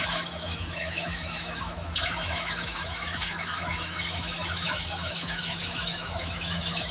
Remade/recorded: remade